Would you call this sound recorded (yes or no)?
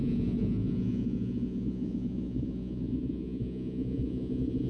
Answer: no